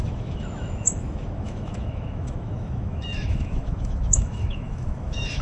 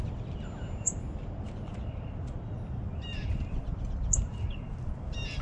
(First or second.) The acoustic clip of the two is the second